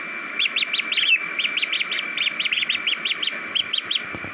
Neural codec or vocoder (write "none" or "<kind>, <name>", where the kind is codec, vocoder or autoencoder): none